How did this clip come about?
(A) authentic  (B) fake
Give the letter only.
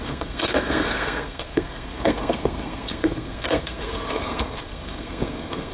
B